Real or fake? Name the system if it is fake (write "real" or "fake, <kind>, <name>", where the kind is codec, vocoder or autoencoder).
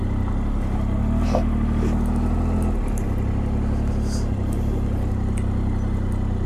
real